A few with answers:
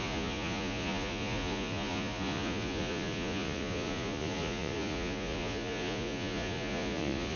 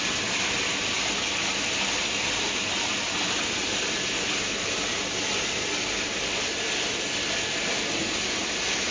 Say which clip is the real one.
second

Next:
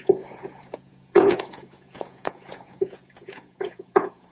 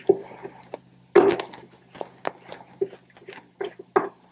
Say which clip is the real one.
second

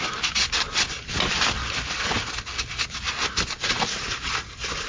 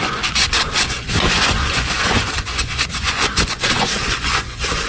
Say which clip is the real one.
first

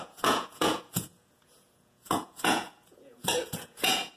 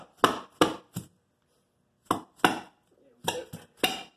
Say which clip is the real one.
second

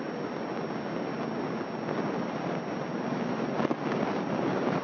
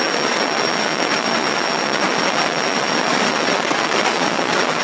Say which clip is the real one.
first